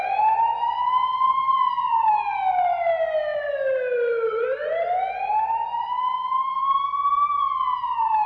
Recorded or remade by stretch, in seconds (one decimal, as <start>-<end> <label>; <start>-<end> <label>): 0.0-1.3 recorded; 1.3-2.1 remade; 2.1-3.3 recorded; 3.3-5.0 remade; 5.0-8.3 recorded